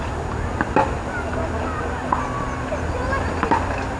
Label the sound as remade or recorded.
recorded